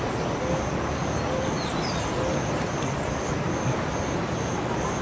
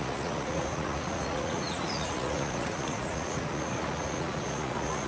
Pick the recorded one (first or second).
first